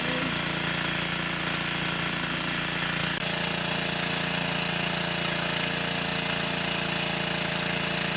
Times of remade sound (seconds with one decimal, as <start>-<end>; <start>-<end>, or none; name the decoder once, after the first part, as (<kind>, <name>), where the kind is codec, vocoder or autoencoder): none